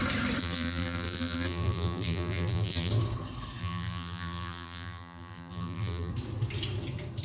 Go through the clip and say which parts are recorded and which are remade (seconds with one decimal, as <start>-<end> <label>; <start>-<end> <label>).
0.0-0.4 recorded; 0.4-2.9 remade; 2.9-3.6 recorded; 3.6-6.1 remade; 6.1-7.2 recorded